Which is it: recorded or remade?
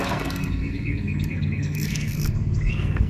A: remade